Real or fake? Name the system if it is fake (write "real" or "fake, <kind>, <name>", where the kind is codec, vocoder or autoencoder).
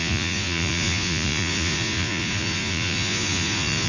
fake, vocoder, Vocos